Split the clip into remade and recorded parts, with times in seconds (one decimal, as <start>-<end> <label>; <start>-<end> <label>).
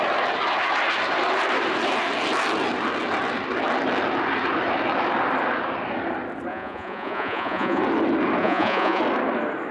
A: 0.0-6.5 recorded; 6.5-7.8 remade; 7.8-8.4 recorded; 8.4-9.0 remade; 9.0-9.7 recorded